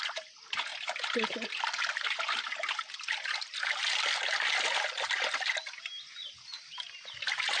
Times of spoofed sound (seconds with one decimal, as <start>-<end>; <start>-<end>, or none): none